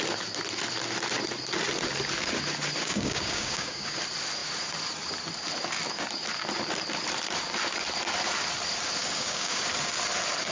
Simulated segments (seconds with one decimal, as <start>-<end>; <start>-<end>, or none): 2.8-4.0; 9.0-9.7